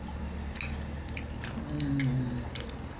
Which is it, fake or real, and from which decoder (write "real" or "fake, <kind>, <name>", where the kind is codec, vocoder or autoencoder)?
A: real